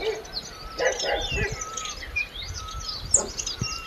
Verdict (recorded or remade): recorded